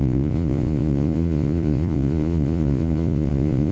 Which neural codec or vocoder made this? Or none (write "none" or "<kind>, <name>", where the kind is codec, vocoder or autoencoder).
vocoder, Vocos